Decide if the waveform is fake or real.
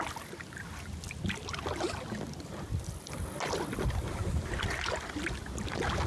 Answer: real